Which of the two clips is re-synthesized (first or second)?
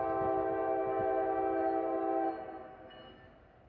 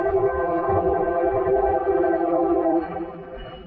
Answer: second